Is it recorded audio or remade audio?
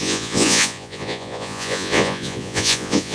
remade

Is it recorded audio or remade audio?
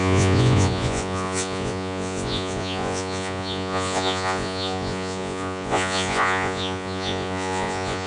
remade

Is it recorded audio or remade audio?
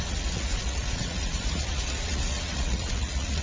remade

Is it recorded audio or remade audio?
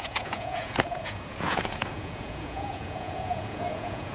remade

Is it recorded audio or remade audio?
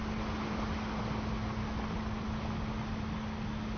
recorded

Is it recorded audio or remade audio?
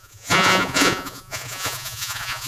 remade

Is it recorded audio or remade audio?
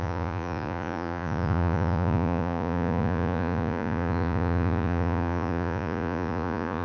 remade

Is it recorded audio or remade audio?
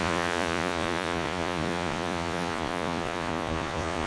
remade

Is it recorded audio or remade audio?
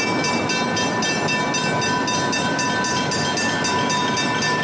recorded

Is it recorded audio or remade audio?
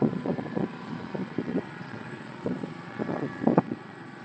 remade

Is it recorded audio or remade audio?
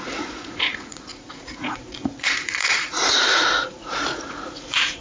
remade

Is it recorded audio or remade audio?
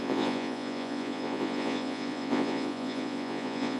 remade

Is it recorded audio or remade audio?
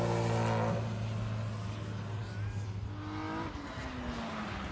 recorded